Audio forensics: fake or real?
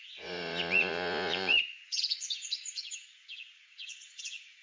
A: fake